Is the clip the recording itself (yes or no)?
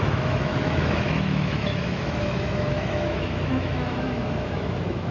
no